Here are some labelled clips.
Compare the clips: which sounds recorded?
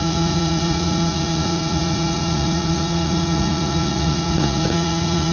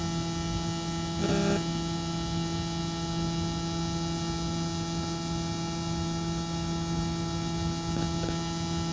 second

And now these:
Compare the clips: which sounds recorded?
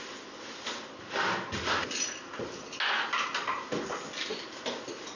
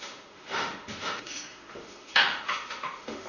first